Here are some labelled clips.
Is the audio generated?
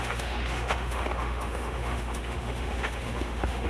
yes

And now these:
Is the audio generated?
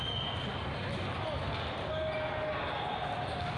no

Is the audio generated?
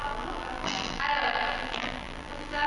yes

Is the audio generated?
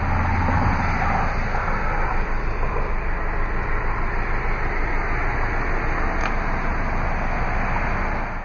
no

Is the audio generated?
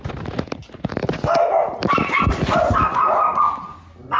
no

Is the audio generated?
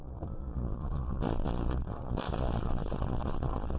yes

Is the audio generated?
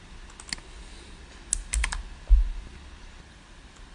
no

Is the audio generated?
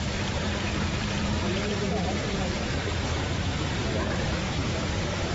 yes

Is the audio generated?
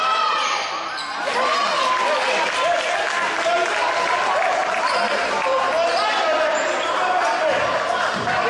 no